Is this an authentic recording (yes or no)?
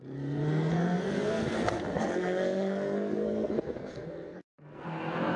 no